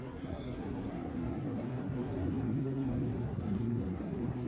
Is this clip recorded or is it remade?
remade